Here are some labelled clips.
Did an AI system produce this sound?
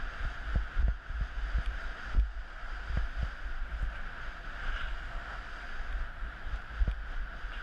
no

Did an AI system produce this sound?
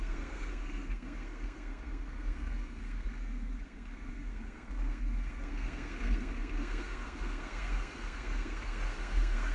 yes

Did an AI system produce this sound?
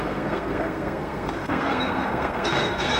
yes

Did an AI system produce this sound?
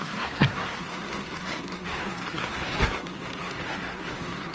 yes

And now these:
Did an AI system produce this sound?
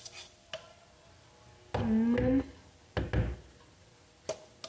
no